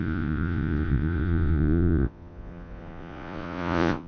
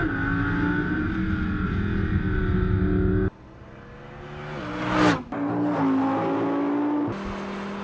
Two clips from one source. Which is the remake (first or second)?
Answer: first